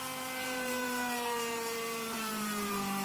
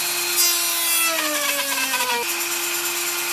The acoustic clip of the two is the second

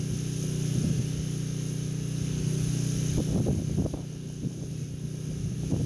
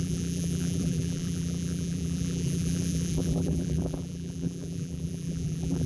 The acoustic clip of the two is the first